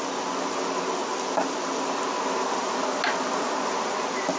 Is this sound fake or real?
real